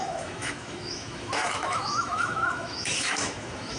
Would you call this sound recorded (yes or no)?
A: no